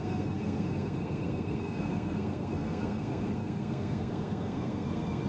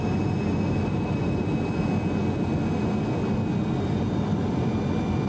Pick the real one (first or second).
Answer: second